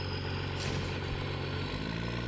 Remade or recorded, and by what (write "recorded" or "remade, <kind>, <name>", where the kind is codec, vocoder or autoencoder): recorded